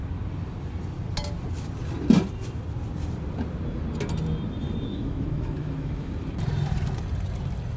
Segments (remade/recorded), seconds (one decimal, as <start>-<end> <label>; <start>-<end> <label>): 0.0-4.9 recorded; 4.9-6.1 remade; 6.1-7.8 recorded